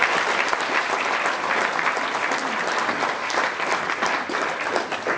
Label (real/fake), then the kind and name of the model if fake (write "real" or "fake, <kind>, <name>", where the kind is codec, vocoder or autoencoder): real